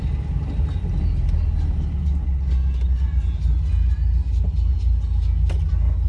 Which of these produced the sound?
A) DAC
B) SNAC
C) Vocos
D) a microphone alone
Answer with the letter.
D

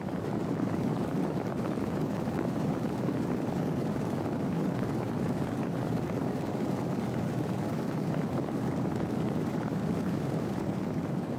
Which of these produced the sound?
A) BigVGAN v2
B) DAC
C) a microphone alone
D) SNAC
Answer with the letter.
B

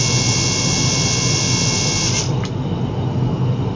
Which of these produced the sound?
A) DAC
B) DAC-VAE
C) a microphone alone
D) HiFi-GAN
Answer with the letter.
C